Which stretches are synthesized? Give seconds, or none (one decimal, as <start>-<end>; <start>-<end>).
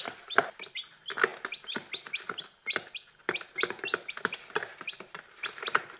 none